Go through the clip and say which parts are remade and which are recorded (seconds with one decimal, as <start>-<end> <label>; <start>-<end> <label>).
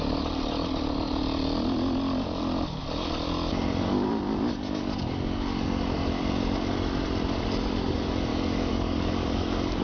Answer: 0.0-8.3 recorded; 8.3-9.8 remade